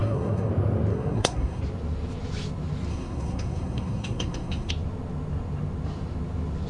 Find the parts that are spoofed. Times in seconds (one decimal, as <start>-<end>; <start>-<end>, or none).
0.0-0.5; 0.9-1.6; 2.9-4.7